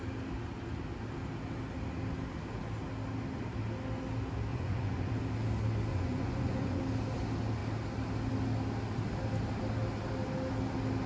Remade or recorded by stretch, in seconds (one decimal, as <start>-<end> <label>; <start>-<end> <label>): 0.0-4.5 recorded; 4.5-5.1 remade; 5.1-5.9 recorded; 5.9-6.8 remade; 6.8-11.1 recorded